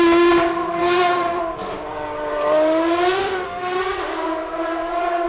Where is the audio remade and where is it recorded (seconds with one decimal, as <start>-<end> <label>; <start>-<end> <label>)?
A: 0.0-0.8 recorded; 0.8-1.4 remade; 1.4-3.2 recorded; 3.2-3.8 remade; 3.8-5.3 recorded